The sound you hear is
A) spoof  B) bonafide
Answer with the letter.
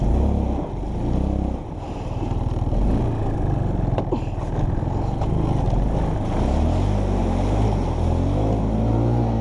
B